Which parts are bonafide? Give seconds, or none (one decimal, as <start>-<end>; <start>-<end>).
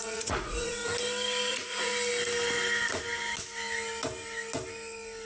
0.8-1.5; 1.9-5.3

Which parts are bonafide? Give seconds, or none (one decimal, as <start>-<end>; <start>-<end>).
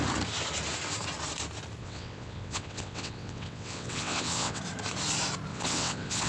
0.0-1.8; 4.6-5.5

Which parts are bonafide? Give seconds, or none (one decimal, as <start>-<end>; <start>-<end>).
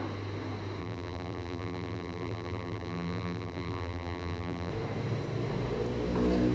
0.0-0.8; 4.7-6.5